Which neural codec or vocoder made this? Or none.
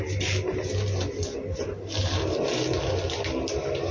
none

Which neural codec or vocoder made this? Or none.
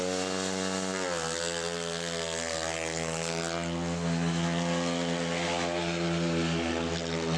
none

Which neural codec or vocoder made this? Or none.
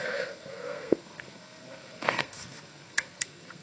codec, SNAC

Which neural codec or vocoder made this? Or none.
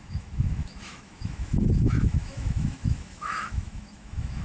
autoencoder, DAC-VAE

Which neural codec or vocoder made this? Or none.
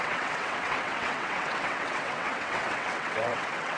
vocoder, WaveNeXt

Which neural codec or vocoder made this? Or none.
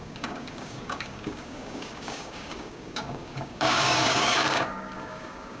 codec, DAC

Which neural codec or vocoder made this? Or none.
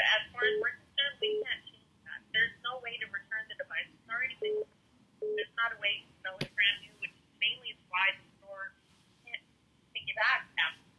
none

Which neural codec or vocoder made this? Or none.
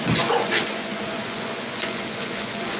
vocoder, Vocos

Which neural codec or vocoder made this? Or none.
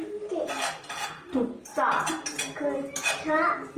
none